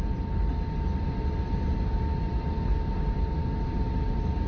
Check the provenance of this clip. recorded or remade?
recorded